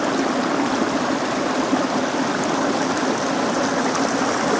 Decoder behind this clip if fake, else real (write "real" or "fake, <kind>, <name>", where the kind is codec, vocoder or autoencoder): real